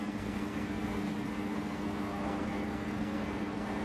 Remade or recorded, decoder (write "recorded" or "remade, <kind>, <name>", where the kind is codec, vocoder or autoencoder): remade, codec, SNAC